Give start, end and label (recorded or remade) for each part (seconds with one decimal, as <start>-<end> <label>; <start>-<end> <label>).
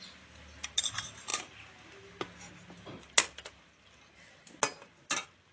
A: 0.0-5.5 recorded